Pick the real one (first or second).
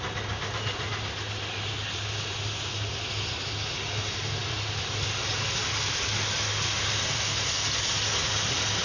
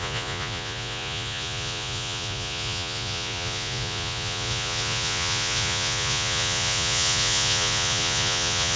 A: first